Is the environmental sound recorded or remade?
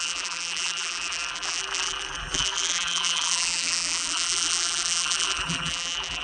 remade